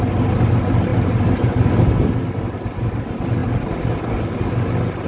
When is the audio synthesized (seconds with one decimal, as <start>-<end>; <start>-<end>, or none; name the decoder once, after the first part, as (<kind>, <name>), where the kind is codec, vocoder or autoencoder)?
none